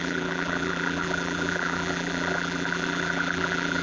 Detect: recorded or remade remade